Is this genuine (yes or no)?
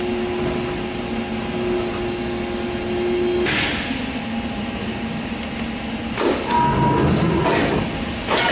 yes